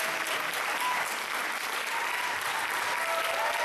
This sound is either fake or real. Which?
real